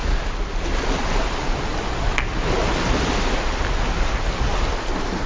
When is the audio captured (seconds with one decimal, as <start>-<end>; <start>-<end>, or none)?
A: 0.0-5.3